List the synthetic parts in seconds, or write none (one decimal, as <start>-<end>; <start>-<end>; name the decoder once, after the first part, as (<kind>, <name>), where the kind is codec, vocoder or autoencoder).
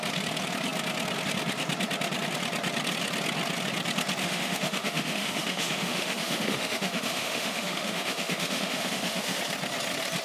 4.2-9.4 (autoencoder, DAC-VAE)